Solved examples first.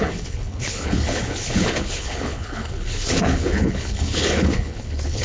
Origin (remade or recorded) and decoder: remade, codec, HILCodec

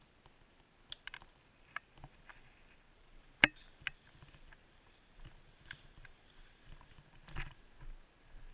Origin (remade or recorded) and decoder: recorded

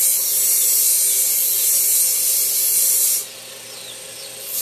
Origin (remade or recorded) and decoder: recorded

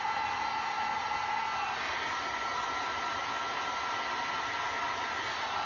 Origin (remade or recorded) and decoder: recorded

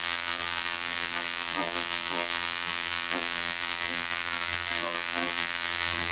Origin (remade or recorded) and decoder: remade, vocoder, BigVGAN v2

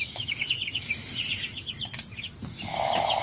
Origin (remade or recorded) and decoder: recorded